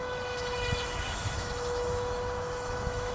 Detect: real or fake fake